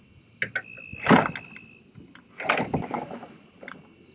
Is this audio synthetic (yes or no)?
no